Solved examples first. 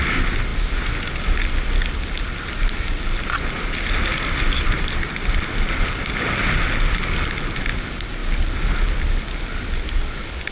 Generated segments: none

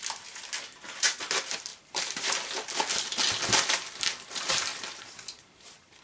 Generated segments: 1.7-2.5; 4.7-6.0

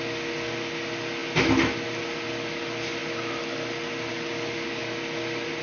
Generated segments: 1.2-2.0; 3.0-4.1

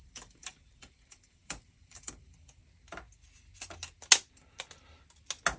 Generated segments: 0.0-2.6